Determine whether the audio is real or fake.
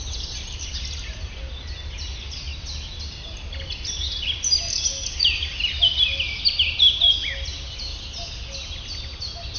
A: real